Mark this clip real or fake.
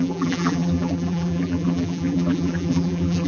fake